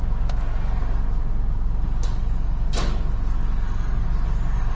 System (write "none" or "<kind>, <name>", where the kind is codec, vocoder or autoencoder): none